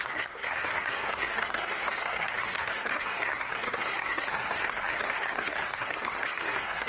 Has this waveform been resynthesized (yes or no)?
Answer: yes